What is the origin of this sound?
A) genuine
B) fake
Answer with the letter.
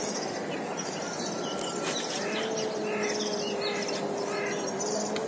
A